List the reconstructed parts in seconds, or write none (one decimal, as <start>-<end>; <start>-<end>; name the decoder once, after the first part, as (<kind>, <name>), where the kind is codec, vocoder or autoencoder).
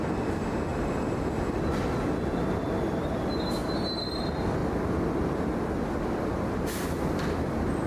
0.7-1.2 (vocoder, BigVGAN v2)